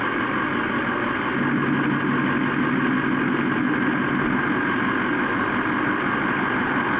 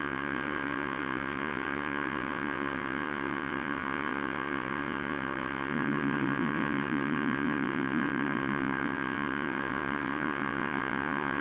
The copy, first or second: second